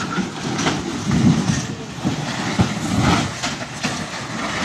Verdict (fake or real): real